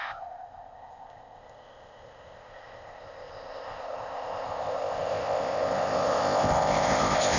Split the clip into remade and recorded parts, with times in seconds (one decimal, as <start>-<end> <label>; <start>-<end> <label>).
0.0-7.4 remade